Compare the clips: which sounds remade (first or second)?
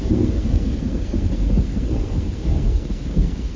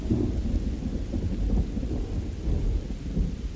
first